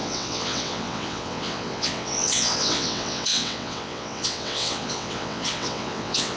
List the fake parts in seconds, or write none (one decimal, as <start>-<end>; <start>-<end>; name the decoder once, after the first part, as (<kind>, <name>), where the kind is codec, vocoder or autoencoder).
0.0-6.4 (vocoder, WaveNeXt)